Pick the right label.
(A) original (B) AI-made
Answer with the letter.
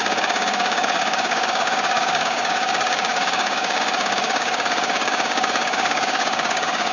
B